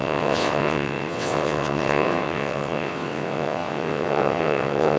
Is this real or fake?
fake